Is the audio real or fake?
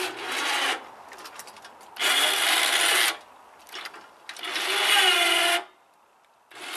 real